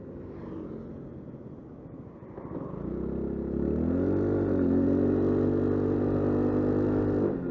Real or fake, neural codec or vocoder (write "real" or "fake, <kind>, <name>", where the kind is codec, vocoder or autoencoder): real